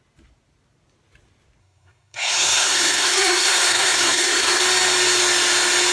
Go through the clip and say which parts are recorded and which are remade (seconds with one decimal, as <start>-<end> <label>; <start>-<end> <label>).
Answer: 0.0-1.6 recorded; 1.6-4.6 remade; 4.6-5.9 recorded